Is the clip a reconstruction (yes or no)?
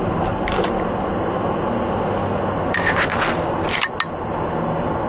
no